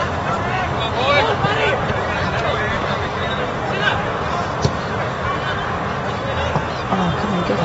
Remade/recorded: recorded